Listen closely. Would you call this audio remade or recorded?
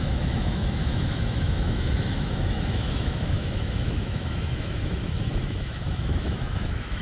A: remade